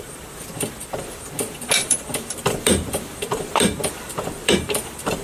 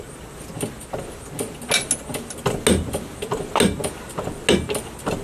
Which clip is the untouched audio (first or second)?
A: second